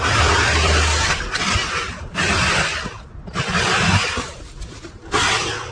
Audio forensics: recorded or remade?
recorded